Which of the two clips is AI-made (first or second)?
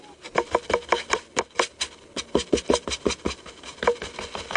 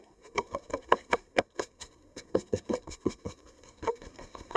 second